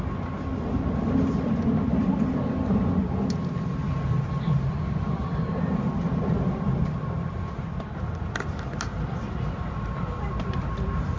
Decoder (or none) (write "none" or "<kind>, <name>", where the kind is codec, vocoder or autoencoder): none